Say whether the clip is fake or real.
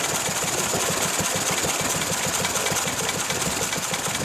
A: real